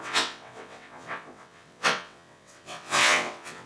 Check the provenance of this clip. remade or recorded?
remade